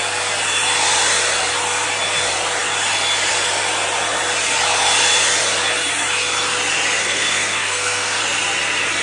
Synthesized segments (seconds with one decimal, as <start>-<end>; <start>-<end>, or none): 7.0-8.2